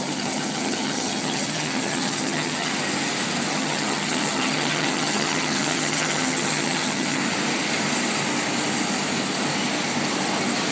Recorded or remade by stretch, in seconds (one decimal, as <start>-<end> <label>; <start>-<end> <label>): 0.0-2.7 remade; 2.7-3.5 recorded; 3.5-7.2 remade; 7.2-10.7 recorded